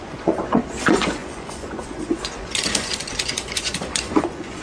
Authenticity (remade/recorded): remade